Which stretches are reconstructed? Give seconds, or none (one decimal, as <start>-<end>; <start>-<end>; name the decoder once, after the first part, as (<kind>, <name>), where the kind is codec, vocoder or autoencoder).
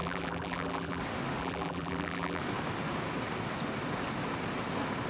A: 0.0-1.0 (vocoder, BigVGAN v2); 1.4-2.4